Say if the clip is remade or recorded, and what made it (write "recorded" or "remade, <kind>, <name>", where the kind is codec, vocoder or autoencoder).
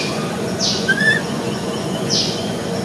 remade, vocoder, Vocos